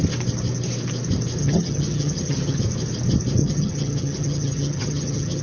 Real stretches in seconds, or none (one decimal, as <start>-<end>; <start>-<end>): 0.0-1.4; 2.6-3.4